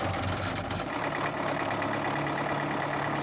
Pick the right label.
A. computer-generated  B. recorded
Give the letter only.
B